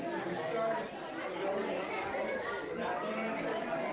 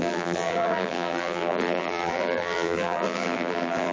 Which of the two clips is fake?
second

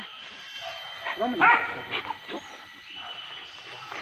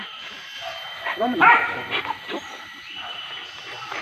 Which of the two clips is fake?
second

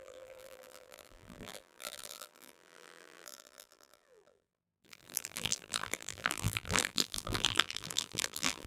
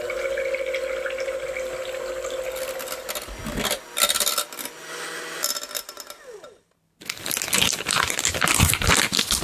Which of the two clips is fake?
first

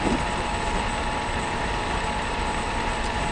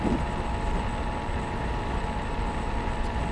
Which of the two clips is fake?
first